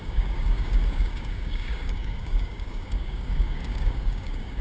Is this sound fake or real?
fake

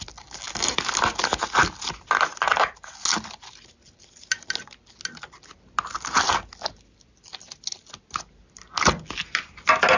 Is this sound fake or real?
real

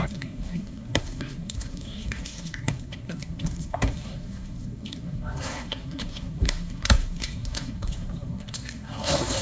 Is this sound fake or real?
fake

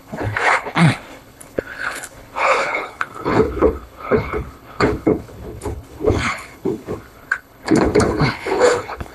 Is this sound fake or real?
fake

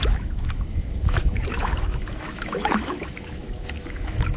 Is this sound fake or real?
fake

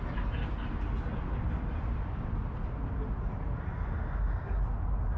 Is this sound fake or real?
real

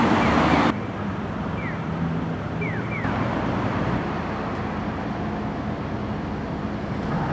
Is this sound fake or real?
real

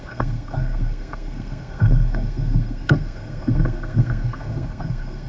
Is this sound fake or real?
fake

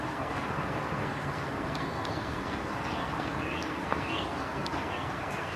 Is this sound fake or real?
fake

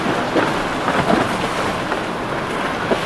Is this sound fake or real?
real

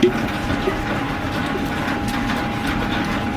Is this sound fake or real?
real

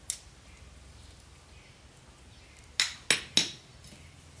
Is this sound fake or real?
real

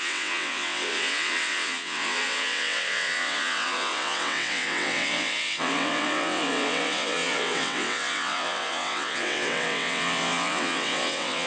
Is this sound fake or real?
fake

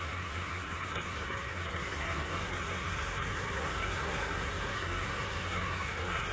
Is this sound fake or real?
fake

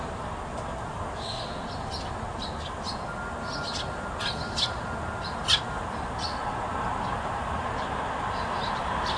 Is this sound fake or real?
real